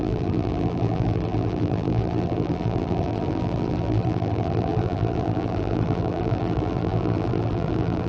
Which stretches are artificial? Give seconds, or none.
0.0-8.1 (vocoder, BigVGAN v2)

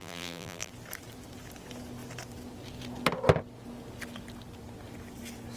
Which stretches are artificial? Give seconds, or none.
0.0-0.7 (vocoder, BigVGAN v2)

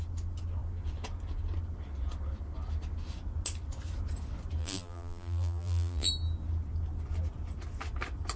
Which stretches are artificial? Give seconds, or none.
4.6-6.1 (vocoder, BigVGAN v2)

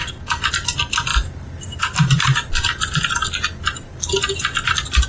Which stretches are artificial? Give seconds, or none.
1.1-2.5 (vocoder, BigVGAN v2)